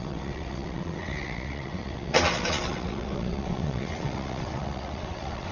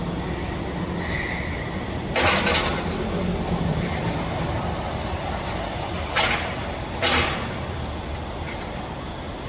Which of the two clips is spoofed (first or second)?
first